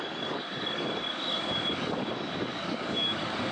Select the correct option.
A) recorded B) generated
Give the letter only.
B